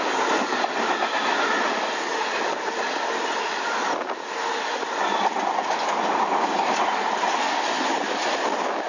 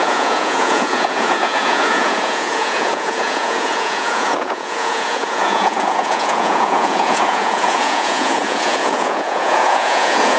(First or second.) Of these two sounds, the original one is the first